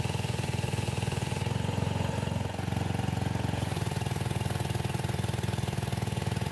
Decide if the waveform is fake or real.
fake